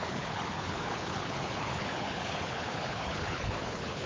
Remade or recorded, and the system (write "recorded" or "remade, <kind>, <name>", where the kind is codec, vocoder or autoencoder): remade, codec, HILCodec